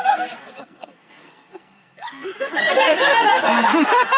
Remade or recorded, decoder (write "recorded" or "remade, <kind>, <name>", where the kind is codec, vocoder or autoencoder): remade, codec, SNAC